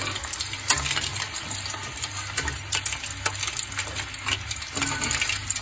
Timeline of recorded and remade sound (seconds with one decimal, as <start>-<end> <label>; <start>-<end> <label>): 0.0-5.6 recorded